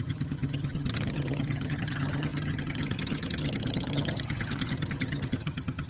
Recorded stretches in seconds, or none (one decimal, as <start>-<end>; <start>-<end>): none